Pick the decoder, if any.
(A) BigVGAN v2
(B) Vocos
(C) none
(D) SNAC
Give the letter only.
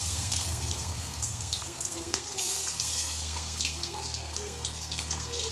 D